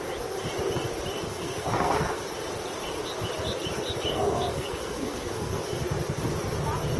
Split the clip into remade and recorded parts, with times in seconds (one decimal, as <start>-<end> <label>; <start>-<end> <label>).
0.0-1.3 recorded; 1.3-2.3 remade; 2.3-4.1 recorded; 4.1-5.6 remade; 5.6-7.0 recorded